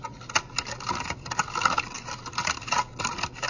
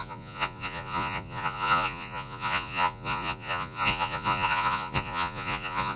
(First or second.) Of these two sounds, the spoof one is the second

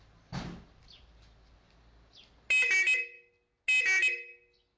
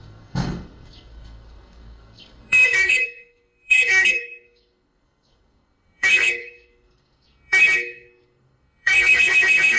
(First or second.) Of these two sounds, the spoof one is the second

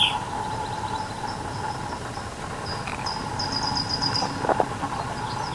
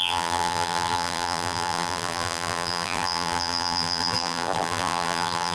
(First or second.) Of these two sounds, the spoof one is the second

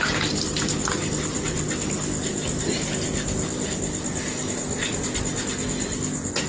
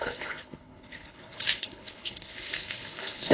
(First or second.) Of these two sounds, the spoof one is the second